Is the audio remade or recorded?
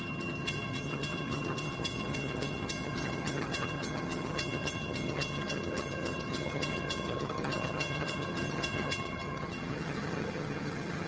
remade